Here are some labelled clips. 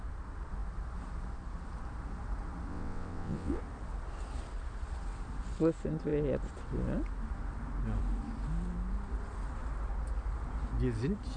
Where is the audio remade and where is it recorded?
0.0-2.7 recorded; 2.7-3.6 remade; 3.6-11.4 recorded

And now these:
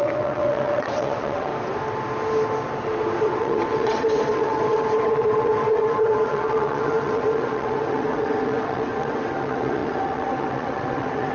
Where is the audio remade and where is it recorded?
0.0-1.5 remade; 1.5-3.2 recorded; 3.2-11.3 remade

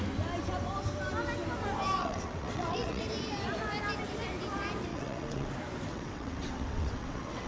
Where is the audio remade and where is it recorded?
0.0-2.0 recorded; 2.0-3.0 remade; 3.0-4.9 recorded; 4.9-5.5 remade; 5.5-5.9 recorded; 5.9-7.5 remade

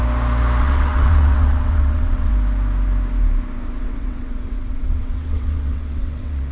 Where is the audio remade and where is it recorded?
0.0-0.6 recorded; 0.6-2.3 remade; 2.3-3.8 recorded; 3.8-6.5 remade

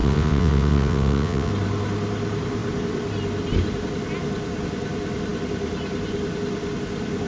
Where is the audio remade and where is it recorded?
0.0-1.5 remade; 1.5-7.3 recorded

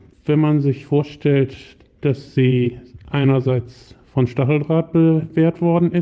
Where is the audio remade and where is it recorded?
0.0-2.2 recorded; 2.2-3.6 remade; 3.6-6.0 recorded